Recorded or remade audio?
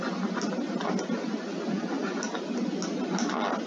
recorded